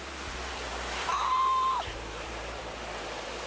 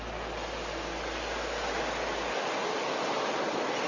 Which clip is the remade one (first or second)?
first